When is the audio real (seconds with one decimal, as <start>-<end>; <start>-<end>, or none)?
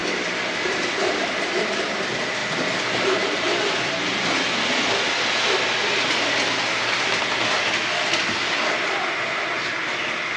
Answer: 0.0-10.4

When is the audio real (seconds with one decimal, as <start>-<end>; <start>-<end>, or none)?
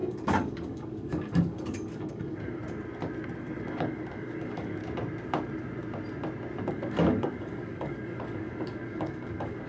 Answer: 2.6-3.4; 4.8-6.7